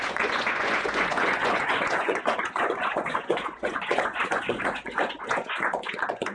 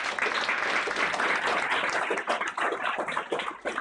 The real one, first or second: second